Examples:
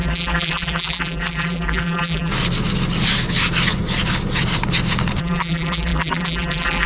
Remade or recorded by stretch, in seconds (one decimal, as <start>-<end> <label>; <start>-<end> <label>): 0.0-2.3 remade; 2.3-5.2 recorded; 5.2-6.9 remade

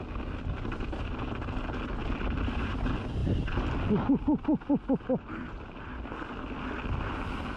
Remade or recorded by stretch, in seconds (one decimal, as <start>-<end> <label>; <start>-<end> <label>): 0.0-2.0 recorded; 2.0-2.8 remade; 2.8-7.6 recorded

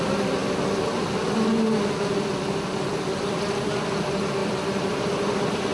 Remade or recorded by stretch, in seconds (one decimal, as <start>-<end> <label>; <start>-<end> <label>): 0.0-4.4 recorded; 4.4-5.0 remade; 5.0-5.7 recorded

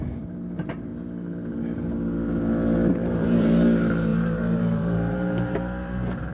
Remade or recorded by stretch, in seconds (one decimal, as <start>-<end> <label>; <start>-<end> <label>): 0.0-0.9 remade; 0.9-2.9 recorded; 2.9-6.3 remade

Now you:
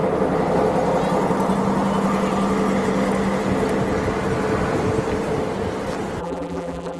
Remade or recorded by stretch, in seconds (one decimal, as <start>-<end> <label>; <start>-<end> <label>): 0.0-6.2 recorded; 6.2-7.0 remade

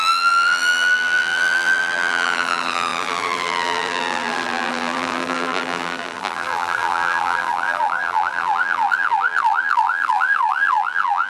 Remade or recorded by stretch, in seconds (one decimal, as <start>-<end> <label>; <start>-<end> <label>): 0.0-11.3 remade

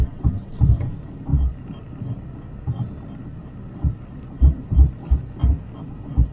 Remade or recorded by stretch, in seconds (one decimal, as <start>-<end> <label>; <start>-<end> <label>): 0.0-1.3 recorded; 1.3-4.9 remade; 4.9-6.3 recorded